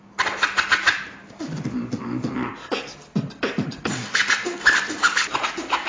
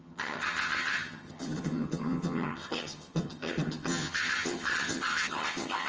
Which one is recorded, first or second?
first